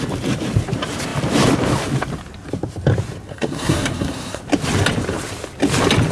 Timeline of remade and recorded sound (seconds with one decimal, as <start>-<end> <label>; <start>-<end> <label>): 0.0-3.3 recorded; 3.3-4.4 remade; 4.4-6.1 recorded